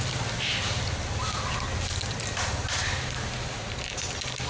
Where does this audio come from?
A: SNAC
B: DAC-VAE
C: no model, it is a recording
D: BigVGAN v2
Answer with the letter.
C